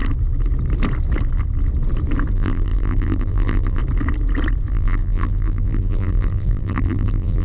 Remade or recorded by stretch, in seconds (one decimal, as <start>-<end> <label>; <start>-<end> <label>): 0.0-2.3 recorded; 2.3-3.8 remade; 3.8-4.7 recorded; 4.7-7.4 remade